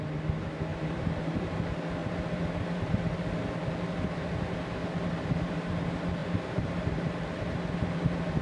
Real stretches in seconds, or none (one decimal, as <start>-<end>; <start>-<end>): 0.0-0.7; 1.6-2.0; 3.8-4.8; 5.7-6.2; 7.7-8.4